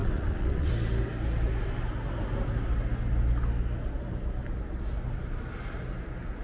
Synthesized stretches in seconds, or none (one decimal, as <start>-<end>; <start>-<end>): 0.0-0.7